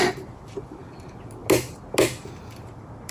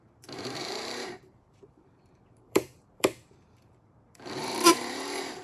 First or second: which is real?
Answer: first